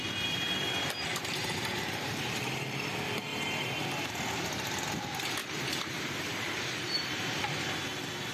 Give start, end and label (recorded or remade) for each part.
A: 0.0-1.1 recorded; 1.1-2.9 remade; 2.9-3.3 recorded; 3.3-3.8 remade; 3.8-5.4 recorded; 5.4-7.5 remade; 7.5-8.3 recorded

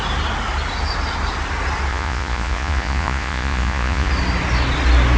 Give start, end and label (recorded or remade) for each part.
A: 0.0-1.9 recorded; 1.9-4.1 remade; 4.1-5.2 recorded

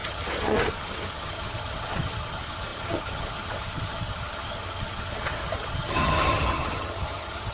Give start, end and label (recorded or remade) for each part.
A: 0.0-7.5 remade

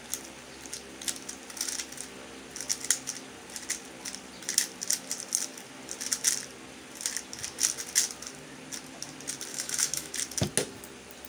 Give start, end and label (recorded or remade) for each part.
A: 0.0-9.5 recorded; 9.5-10.1 remade; 10.1-11.3 recorded